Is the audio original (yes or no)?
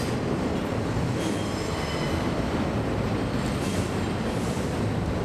yes